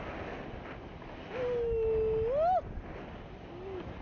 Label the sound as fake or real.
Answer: real